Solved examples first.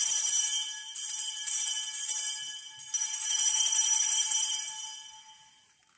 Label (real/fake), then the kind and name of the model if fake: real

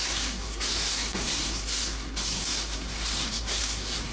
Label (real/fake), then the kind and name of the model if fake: fake, codec, SNAC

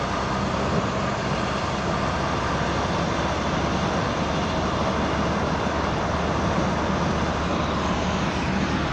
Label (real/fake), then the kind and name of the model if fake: real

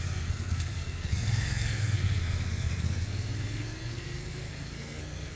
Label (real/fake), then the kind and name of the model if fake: fake, codec, SNAC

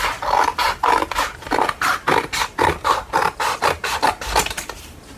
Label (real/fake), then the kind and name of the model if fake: real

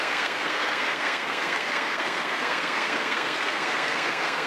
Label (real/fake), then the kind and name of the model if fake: fake, codec, SNAC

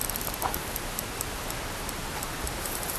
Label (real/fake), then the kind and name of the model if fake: real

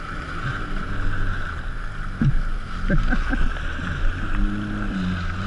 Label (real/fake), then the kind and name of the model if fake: real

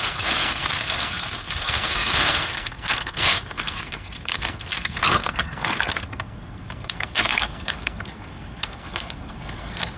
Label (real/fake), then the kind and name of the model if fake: fake, codec, SNAC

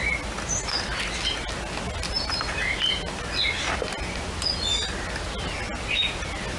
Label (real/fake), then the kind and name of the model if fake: real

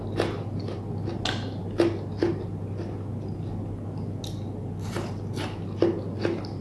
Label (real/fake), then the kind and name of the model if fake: real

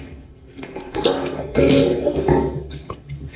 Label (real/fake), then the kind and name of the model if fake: fake, codec, SNAC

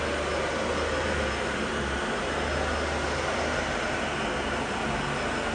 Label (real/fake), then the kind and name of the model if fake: real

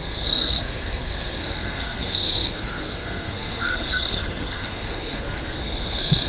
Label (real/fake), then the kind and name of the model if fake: fake, codec, SNAC